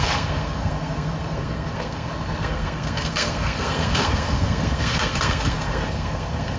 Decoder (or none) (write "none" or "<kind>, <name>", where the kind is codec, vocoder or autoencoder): codec, SNAC